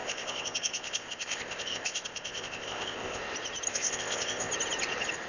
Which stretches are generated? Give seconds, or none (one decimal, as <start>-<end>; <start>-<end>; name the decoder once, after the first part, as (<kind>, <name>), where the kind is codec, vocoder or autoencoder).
0.0-3.2 (codec, ZipCodec); 3.7-4.5